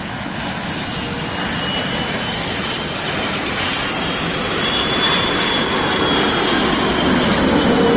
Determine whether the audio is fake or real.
real